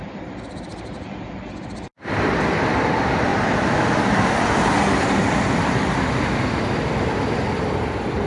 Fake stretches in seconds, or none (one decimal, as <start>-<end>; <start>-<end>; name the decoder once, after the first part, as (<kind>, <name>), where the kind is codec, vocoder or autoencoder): 0.0-0.7 (vocoder, BigVGAN v2); 1.5-8.3